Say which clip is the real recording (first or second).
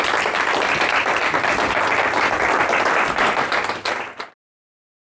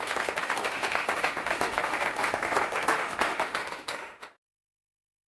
first